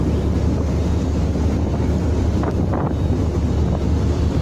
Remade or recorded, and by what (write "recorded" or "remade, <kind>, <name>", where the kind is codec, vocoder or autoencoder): recorded